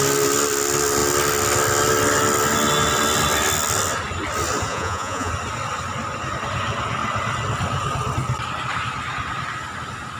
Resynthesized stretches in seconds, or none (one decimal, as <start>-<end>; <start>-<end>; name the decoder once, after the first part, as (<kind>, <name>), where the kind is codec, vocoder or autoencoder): 4.7-5.3 (vocoder, Vocos)